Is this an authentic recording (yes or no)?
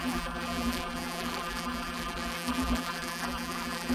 no